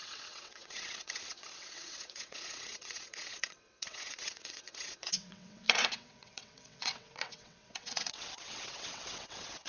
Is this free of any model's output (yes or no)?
no